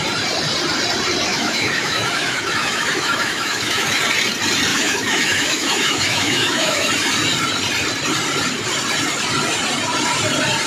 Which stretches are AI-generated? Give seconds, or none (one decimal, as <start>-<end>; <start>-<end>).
1.3-4.0; 4.7-6.9